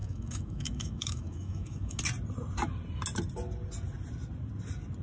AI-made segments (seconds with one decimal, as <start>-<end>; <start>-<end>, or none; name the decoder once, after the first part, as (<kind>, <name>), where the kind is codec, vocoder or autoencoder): 0.0-2.0 (autoencoder, DAC-VAE)